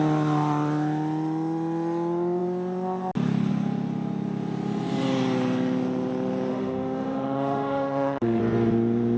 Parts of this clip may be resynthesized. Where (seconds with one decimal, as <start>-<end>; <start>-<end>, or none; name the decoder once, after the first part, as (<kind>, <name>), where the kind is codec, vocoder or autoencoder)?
6.5-8.4 (autoencoder, DAC-VAE)